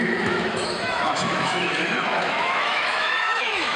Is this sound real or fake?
fake